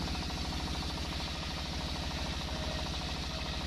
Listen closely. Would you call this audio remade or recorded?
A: recorded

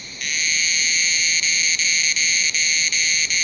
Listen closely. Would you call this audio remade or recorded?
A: remade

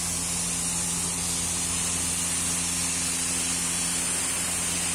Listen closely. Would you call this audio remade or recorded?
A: recorded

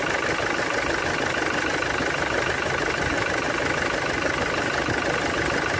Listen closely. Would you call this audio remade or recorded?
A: recorded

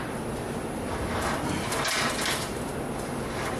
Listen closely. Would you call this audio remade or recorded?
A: recorded